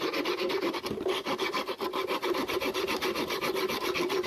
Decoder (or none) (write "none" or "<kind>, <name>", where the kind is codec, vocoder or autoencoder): none